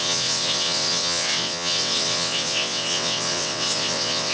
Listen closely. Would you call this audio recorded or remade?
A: remade